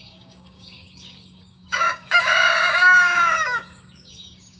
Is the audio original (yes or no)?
no